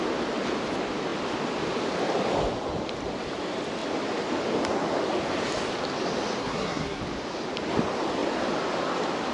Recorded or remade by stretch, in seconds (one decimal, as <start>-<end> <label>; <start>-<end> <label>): 0.0-6.4 recorded; 6.4-7.0 remade; 7.0-9.3 recorded